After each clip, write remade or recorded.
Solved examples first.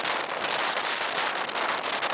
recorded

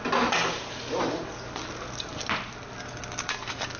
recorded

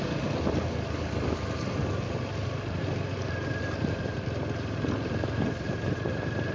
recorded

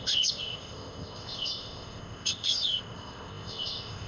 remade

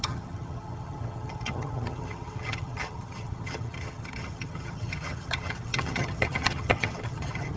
remade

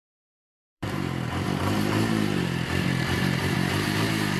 remade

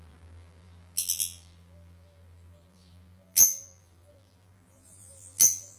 remade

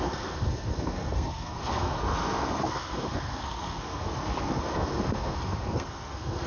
remade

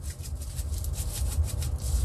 recorded